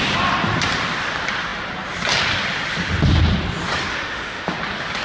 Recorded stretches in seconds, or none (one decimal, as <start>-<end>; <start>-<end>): 0.0-3.9; 4.5-5.0